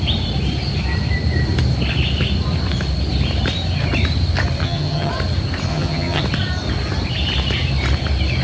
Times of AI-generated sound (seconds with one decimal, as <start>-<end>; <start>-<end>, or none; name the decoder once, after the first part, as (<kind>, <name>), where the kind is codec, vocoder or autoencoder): 4.6-5.1 (vocoder, HiFi-GAN); 5.7-6.2